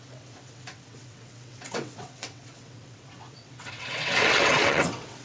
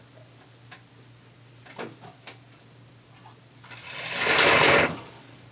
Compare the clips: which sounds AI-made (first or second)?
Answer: first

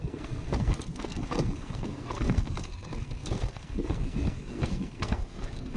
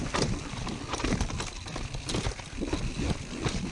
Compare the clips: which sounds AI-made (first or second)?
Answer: first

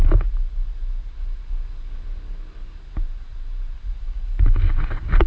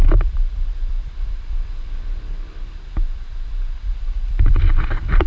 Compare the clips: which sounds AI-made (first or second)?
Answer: second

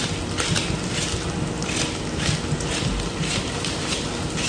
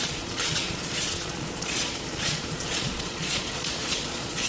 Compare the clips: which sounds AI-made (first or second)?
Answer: second